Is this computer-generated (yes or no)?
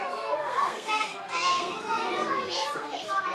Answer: yes